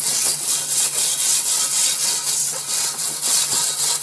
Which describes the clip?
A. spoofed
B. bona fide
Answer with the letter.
A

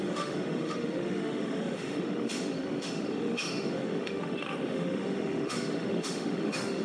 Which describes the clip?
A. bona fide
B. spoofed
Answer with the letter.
B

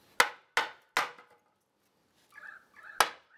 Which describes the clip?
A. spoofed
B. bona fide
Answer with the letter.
B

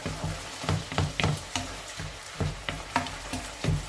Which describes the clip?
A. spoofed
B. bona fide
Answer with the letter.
A